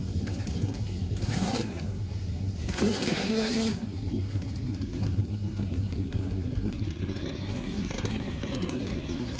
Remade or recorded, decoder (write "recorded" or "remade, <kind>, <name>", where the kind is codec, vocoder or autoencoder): remade, codec, SNAC